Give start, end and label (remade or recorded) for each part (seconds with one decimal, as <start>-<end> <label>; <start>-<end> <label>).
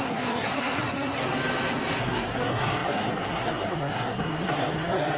0.0-1.2 remade; 1.2-2.0 recorded; 2.0-5.2 remade